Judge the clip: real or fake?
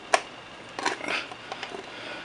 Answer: real